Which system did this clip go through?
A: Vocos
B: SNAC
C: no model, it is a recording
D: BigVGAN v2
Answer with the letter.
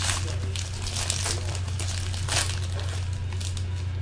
C